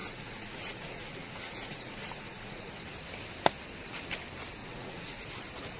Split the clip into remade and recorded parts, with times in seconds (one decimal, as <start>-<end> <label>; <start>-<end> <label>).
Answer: 0.0-2.7 remade; 2.7-4.6 recorded; 4.6-5.2 remade; 5.2-5.8 recorded